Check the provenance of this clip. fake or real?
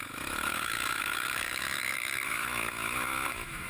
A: fake